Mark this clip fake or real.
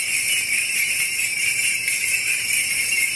fake